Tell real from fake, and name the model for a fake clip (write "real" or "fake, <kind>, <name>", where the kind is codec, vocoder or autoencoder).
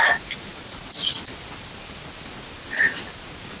real